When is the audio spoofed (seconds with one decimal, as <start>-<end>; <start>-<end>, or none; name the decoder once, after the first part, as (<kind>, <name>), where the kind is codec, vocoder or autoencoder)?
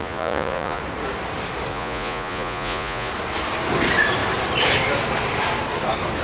0.0-0.8 (vocoder, Vocos); 1.7-3.1